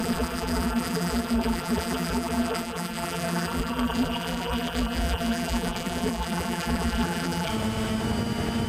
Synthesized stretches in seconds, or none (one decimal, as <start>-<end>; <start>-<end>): 0.0-7.5